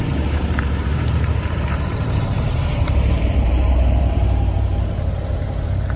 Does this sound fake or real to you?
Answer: fake